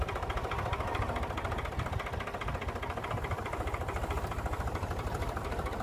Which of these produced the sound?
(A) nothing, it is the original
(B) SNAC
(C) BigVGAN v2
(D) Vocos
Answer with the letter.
A